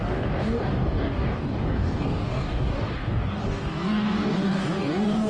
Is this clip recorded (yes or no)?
no